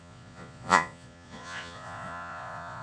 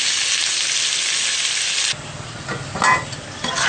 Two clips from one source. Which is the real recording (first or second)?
second